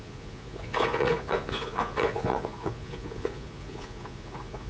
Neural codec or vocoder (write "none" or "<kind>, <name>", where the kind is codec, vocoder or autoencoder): vocoder, Vocos